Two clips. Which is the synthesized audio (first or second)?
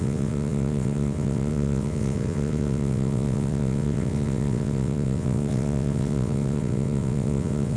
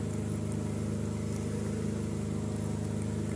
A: first